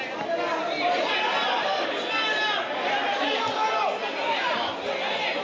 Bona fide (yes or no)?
yes